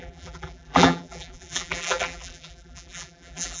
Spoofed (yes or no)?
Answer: yes